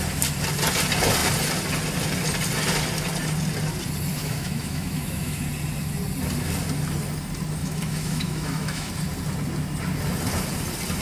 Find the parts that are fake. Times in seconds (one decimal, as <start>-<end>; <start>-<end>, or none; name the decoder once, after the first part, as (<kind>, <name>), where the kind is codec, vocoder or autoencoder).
4.2-5.4 (autoencoder, DAC-VAE); 7.6-8.9